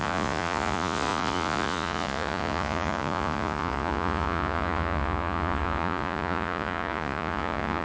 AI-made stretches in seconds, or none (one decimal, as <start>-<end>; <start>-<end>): 0.0-7.8